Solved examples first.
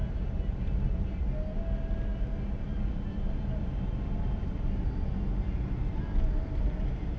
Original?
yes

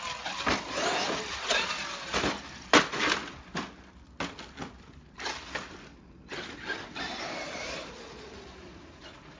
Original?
yes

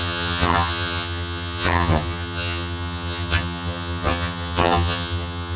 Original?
no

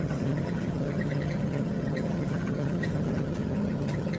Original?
no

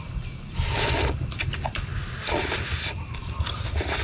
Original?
yes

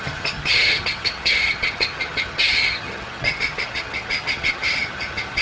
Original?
no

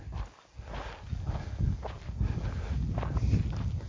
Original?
yes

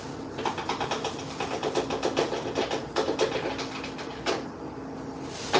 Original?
yes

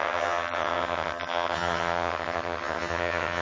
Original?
no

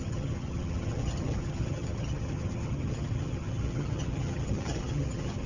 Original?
no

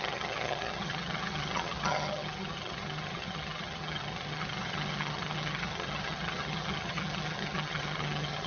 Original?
no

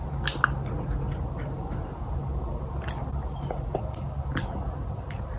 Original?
yes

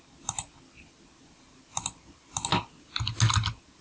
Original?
yes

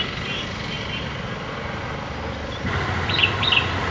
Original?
yes